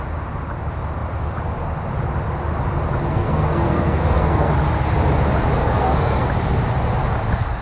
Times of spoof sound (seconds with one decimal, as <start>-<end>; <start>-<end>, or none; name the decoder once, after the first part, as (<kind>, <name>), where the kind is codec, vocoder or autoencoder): 3.1-4.5 (codec, SNAC); 5.6-6.3

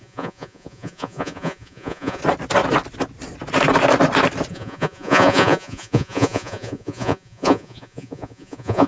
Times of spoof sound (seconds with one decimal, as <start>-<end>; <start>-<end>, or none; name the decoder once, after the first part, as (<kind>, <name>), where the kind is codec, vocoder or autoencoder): 0.0-2.2 (vocoder, Vocos); 4.5-8.9

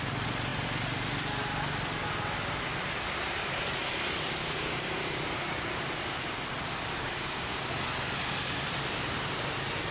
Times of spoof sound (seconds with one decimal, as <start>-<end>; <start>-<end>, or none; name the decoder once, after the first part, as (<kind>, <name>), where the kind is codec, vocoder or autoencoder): 4.4-5.5 (codec, DAC); 6.9-7.7

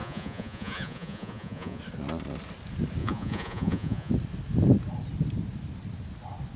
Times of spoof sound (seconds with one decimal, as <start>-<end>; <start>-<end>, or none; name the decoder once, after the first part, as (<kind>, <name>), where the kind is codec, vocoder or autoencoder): 0.0-1.8 (vocoder, Vocos); 3.0-4.1

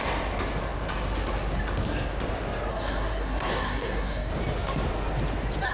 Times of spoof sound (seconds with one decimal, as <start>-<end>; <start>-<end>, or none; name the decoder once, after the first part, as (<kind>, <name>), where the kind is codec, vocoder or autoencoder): 2.7-4.3 (codec, SNAC)

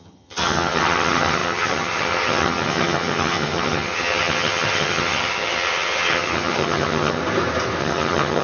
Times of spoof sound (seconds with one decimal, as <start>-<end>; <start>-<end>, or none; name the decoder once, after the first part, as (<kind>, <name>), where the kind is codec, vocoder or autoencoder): 0.0-7.2 (vocoder, HiFi-GAN); 7.8-8.4

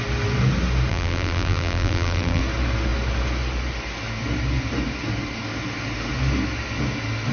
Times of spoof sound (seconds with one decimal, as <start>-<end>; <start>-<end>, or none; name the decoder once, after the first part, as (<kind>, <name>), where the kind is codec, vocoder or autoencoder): 0.9-2.4 (vocoder, BigVGAN v2)